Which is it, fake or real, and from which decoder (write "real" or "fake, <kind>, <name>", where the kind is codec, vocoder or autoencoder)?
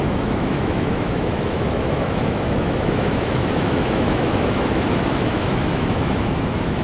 fake, autoencoder, DAC-VAE